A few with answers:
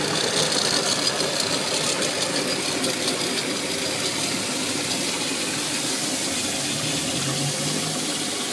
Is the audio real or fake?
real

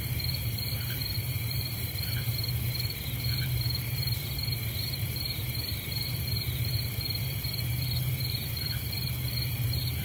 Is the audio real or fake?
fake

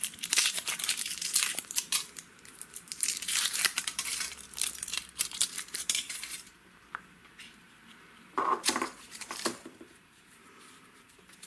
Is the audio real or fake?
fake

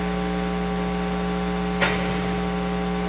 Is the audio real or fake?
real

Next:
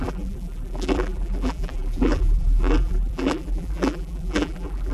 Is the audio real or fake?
fake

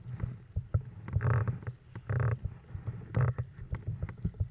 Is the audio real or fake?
real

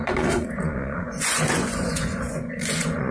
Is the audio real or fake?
fake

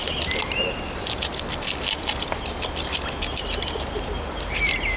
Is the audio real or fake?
real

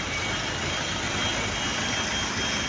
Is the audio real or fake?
real